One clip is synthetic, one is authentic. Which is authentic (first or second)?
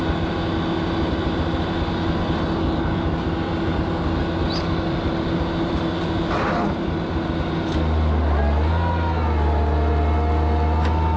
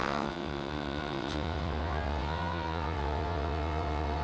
first